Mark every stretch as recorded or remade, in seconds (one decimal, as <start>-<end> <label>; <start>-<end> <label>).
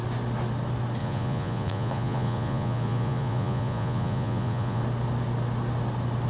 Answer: 0.0-1.0 recorded; 1.0-4.8 remade; 4.8-6.3 recorded